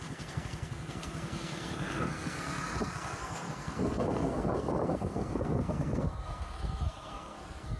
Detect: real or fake fake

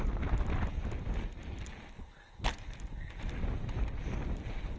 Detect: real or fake real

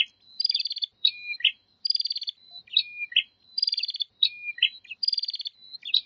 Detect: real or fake real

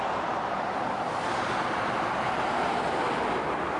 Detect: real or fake real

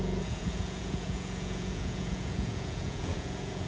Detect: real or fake fake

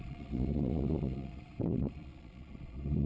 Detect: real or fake fake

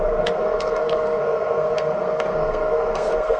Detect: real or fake fake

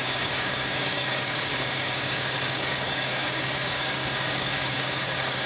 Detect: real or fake fake